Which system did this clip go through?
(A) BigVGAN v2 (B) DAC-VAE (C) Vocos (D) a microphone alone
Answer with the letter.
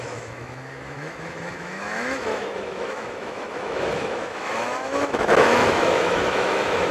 B